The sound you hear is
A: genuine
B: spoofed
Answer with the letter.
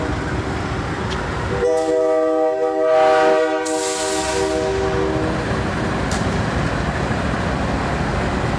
A